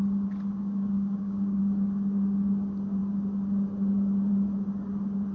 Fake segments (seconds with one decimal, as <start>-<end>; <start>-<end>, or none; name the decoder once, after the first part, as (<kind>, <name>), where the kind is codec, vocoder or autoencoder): 0.6-1.6 (codec, DAC)